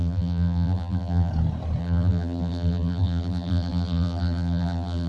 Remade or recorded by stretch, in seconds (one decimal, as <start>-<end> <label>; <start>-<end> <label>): 0.0-1.3 remade; 1.3-1.8 recorded; 1.8-5.1 remade